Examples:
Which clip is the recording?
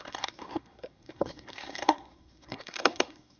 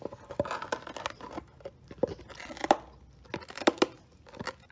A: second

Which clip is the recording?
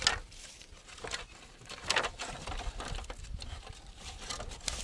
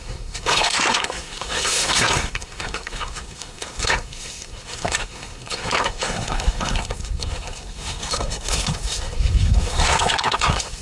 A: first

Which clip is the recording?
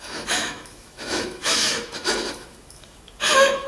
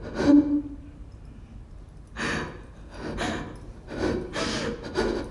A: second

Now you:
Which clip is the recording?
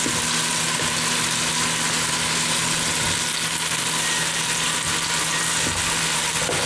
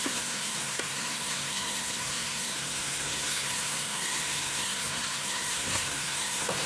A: first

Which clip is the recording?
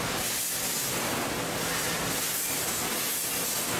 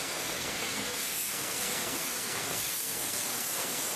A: first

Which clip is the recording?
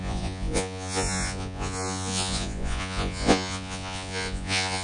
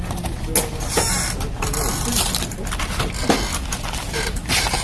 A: second